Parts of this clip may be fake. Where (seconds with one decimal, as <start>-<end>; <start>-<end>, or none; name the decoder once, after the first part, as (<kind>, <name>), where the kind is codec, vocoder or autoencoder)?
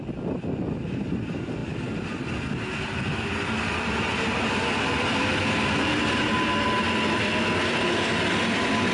none